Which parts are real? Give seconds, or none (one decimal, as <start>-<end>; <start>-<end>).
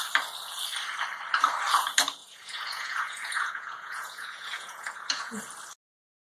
0.0-2.2; 5.4-6.4